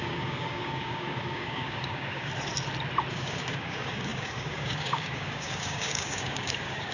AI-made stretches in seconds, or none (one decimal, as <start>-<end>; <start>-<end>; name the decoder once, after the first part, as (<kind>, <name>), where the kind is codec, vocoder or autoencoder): 0.0-2.3 (codec, DAC); 3.1-6.9

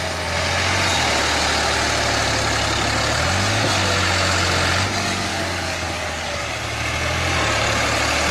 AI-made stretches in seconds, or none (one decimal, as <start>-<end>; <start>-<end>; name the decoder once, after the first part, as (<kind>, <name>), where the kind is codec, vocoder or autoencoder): 5.3-6.5 (codec, DAC)

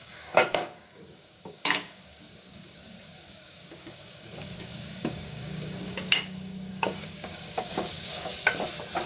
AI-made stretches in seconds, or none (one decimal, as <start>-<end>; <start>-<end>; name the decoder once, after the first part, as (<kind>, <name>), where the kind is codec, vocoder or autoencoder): 0.0-8.3 (codec, DAC)

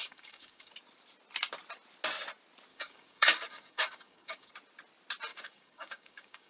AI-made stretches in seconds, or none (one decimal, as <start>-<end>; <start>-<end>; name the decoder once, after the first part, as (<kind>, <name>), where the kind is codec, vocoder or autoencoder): 0.0-0.7 (codec, DAC); 2.7-4.5; 5.3-6.5

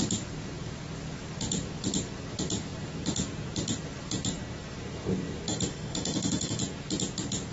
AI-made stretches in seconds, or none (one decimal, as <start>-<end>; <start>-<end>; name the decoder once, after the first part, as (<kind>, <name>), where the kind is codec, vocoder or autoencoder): 5.5-6.6 (codec, DAC)

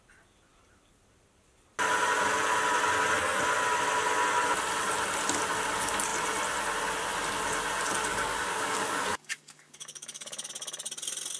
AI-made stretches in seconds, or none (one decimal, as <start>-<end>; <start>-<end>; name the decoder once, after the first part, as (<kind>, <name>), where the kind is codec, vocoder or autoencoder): 8.1-10.5 (codec, DAC)